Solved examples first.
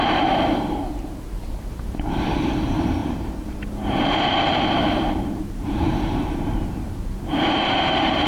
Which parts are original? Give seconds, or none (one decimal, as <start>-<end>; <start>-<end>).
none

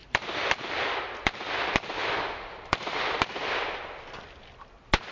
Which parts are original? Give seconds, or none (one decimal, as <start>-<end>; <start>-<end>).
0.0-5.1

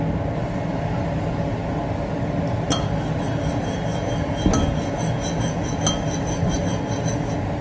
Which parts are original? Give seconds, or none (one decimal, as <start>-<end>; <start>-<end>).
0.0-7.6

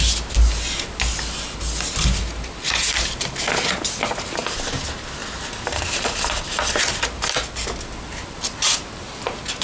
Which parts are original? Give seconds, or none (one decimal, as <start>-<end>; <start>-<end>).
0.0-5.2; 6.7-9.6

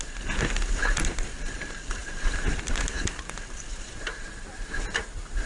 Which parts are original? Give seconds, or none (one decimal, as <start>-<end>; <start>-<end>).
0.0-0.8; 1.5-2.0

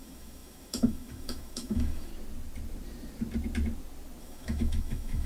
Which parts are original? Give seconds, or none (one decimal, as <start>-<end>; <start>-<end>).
2.1-4.2